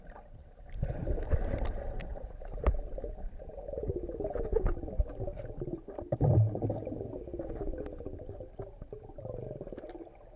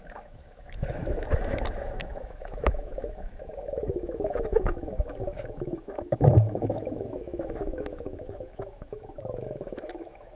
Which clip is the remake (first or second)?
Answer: second